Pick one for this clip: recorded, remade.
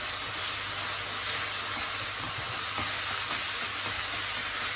recorded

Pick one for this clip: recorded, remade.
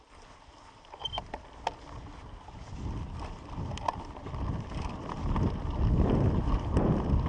recorded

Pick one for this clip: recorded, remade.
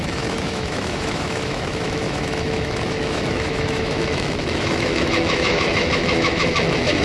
remade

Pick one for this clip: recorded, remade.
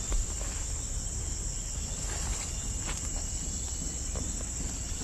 recorded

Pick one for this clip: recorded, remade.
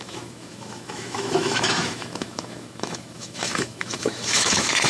remade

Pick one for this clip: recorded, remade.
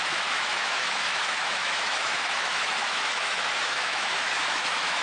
remade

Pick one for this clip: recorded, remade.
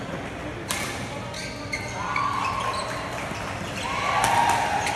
recorded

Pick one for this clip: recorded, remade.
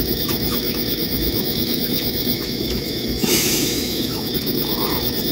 remade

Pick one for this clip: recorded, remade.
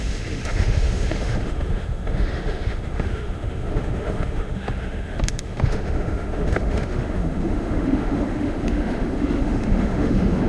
remade